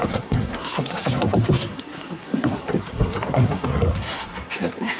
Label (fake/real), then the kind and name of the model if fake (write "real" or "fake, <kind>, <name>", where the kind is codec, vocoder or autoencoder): fake, codec, SNAC